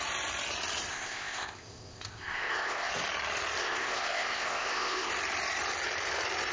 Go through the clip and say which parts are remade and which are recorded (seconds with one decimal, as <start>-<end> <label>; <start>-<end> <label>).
0.0-0.9 recorded; 0.9-2.9 remade; 2.9-3.6 recorded; 3.6-5.1 remade; 5.1-6.5 recorded